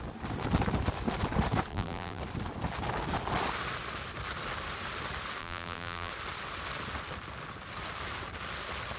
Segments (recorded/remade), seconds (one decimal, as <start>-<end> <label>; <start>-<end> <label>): 0.0-1.7 recorded; 1.7-2.2 remade; 2.2-5.4 recorded; 5.4-6.1 remade; 6.1-9.0 recorded